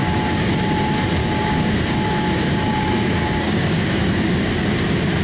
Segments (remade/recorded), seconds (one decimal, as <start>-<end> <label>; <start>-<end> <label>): 0.0-0.5 remade; 0.5-1.2 recorded; 1.2-4.3 remade; 4.3-5.2 recorded